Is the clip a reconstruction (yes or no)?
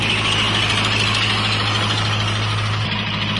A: no